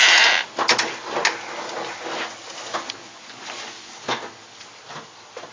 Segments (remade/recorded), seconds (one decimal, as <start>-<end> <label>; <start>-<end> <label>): 0.0-3.0 recorded; 3.0-3.9 remade; 3.9-5.5 recorded